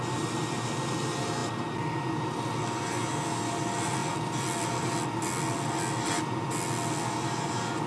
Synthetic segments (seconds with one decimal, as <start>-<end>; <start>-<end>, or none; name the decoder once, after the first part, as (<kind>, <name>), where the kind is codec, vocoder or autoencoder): none